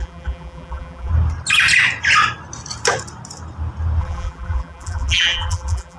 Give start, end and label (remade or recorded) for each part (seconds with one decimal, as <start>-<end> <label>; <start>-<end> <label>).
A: 0.0-1.1 remade; 1.1-4.0 recorded; 4.0-6.0 remade